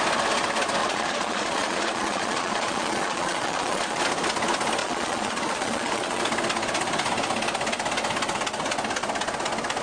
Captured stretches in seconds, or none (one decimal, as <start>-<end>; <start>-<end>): 0.0-0.8; 4.0-4.8; 6.2-9.8